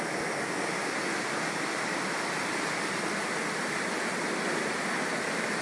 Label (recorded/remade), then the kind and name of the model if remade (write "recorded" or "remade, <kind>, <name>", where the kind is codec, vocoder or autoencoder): recorded